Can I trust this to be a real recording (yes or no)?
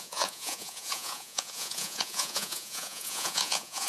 no